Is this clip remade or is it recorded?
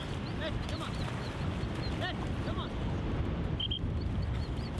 recorded